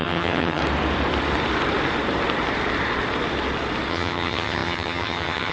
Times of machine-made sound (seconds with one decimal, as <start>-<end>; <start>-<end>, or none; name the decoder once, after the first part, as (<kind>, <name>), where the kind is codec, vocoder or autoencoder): 0.0-0.6 (vocoder, HiFi-GAN); 3.9-5.5